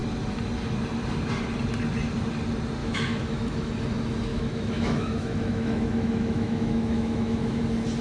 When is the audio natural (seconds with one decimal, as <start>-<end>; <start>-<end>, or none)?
0.0-2.8; 3.7-4.3; 7.6-8.0